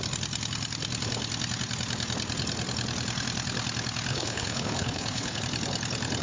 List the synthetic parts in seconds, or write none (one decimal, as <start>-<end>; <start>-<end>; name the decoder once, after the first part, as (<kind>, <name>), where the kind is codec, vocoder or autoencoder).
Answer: 4.1-5.4 (codec, HILCodec)